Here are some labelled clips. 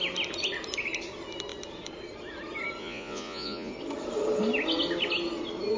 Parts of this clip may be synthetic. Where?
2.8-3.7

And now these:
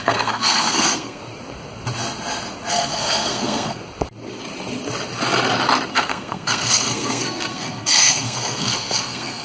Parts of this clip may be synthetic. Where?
0.0-1.2; 2.7-3.8; 5.9-9.4

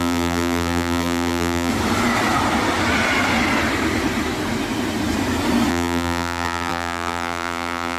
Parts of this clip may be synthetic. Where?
0.0-1.7; 5.7-8.0